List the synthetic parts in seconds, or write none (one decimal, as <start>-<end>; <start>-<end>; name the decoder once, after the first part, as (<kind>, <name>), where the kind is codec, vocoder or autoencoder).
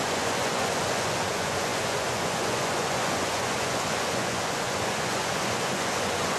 0.0-6.4 (vocoder, Vocos)